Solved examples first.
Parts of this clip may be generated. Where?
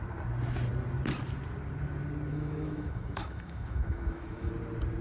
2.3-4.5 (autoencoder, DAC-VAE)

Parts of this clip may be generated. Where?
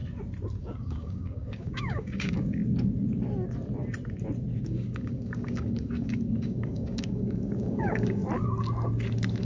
0.6-2.6 (codec, DAC); 4.6-8.2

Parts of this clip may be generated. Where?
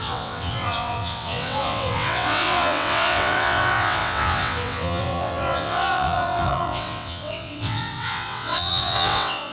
0.0-9.5 (vocoder, WaveNeXt)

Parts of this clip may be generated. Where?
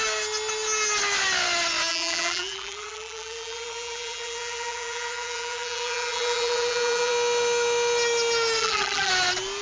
1.9-7.1 (vocoder, BigVGAN v2); 8.6-9.1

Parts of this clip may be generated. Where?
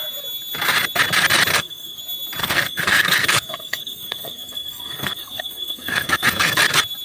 1.5-2.0 (codec, SNAC); 2.4-6.6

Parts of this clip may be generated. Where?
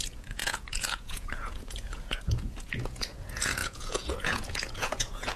0.0-5.4 (vocoder, Vocos)